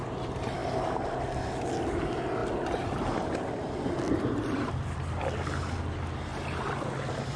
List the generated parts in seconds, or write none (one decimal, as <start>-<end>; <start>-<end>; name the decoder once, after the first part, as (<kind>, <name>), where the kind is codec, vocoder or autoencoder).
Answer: none